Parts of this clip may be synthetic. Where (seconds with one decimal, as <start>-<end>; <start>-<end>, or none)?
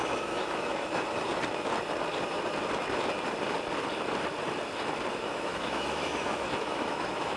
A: 0.0-1.3; 5.1-7.4